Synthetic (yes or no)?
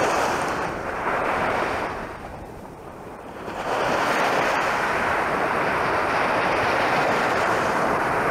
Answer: yes